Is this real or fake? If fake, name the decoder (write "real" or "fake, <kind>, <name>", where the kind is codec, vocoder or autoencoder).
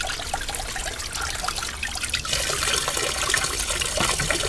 real